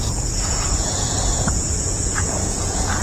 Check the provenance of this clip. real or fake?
fake